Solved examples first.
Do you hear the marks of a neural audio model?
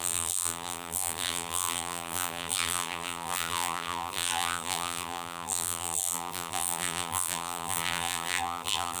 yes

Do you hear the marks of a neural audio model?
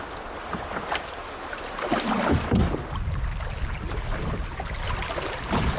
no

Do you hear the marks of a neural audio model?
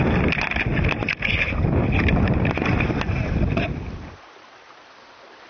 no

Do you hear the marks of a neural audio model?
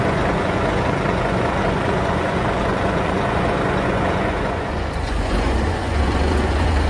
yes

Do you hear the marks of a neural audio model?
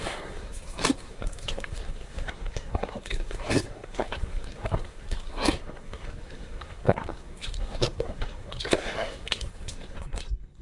yes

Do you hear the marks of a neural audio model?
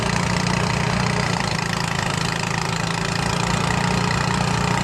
no